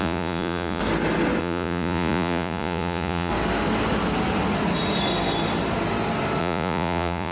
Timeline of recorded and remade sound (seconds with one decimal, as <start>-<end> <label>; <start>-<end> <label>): 0.0-0.8 remade; 0.8-1.4 recorded; 1.4-3.3 remade; 3.3-6.4 recorded; 6.4-7.3 remade